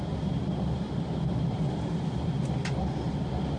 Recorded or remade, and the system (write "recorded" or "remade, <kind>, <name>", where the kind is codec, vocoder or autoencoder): recorded